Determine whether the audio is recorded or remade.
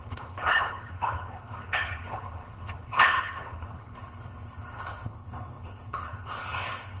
remade